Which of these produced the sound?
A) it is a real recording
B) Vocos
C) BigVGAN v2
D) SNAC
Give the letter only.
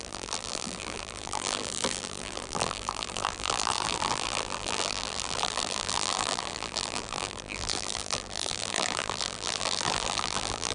C